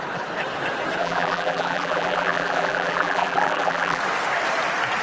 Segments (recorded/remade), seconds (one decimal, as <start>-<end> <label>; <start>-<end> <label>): 0.0-1.0 recorded; 1.0-4.0 remade; 4.0-5.0 recorded